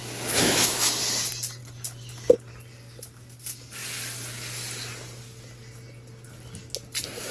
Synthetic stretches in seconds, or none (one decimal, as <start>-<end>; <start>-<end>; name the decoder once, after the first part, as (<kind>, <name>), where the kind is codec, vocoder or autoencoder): 0.0-1.0 (autoencoder, DAC-VAE)